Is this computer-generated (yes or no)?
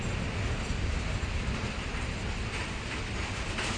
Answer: no